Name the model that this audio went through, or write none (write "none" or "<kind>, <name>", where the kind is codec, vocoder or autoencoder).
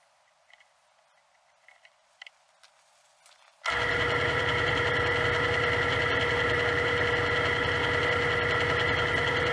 none